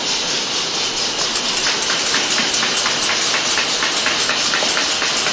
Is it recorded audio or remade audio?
recorded